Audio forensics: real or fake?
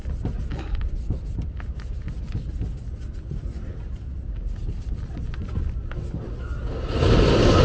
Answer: real